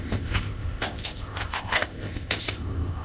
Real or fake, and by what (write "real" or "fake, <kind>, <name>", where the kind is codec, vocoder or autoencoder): fake, codec, ZipCodec